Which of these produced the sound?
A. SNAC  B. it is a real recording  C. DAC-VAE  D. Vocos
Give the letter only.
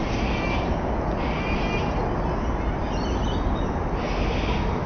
B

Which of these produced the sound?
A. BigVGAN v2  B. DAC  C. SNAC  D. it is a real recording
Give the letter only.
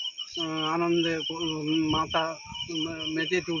D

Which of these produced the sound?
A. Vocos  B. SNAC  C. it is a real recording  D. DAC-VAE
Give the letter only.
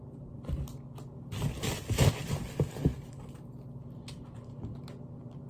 C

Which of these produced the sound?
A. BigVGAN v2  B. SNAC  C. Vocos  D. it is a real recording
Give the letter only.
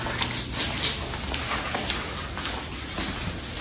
D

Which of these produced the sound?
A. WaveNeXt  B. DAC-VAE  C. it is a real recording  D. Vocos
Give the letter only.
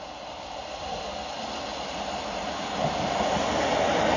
C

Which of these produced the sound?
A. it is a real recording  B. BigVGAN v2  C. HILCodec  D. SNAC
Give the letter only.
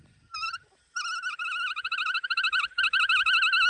A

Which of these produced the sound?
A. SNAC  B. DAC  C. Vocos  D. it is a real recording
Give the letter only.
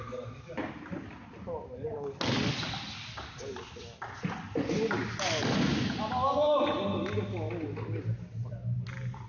D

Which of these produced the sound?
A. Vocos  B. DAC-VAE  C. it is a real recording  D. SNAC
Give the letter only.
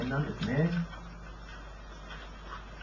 C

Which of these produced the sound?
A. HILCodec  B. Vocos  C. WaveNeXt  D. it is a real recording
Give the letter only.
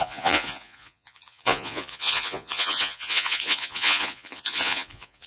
B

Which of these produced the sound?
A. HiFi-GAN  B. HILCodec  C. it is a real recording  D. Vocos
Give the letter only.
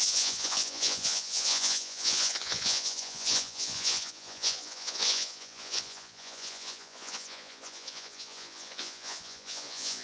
D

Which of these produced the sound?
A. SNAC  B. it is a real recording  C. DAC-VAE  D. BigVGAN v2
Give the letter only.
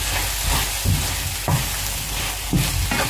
B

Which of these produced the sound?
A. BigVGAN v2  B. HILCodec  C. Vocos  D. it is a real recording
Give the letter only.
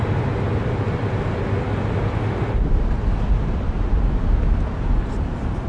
D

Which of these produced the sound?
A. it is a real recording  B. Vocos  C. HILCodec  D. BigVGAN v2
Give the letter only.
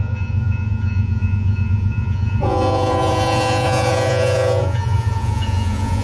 B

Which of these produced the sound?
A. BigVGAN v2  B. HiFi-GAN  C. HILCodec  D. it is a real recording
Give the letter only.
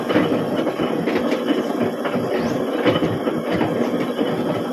A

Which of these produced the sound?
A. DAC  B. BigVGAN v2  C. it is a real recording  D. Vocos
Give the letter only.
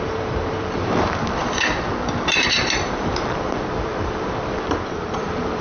B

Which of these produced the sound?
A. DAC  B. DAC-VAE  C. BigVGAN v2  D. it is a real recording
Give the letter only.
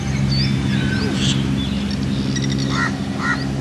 D